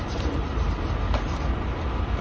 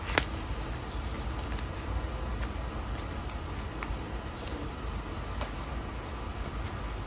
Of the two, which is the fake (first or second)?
first